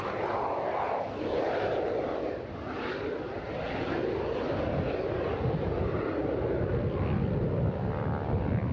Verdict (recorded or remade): recorded